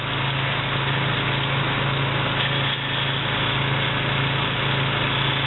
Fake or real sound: real